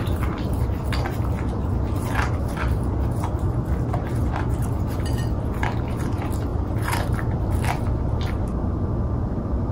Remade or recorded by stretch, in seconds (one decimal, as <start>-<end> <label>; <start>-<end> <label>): 0.0-6.5 recorded; 6.5-8.4 remade; 8.4-9.7 recorded